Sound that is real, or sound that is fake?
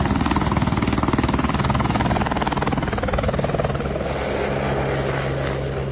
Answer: real